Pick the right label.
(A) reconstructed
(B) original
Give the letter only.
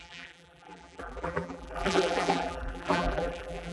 A